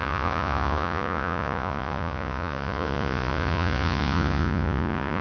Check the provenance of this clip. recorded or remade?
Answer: remade